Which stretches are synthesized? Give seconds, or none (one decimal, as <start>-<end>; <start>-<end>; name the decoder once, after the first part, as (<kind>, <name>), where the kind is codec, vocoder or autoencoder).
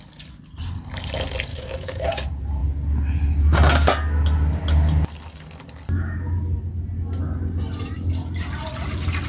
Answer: 1.5-2.1 (autoencoder, DAC-VAE)